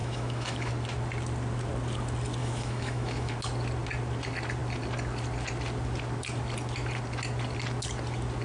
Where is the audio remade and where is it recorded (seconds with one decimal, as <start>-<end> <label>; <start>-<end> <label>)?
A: 0.0-0.7 remade; 0.7-2.4 recorded; 2.4-3.3 remade; 3.3-8.4 recorded

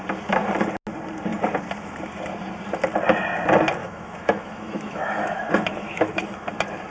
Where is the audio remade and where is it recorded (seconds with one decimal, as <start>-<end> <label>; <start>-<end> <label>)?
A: 0.0-3.8 recorded; 3.8-6.5 remade; 6.5-6.9 recorded